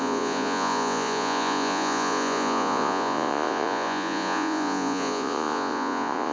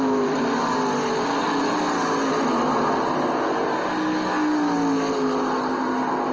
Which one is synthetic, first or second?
first